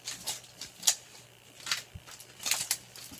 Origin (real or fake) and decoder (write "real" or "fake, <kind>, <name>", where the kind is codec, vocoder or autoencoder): real